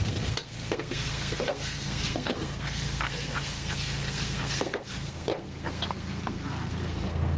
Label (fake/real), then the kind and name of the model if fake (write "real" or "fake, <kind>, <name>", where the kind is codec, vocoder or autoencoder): fake, codec, SNAC